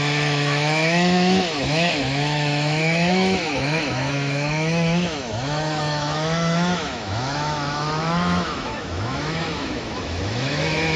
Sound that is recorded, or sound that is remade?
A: remade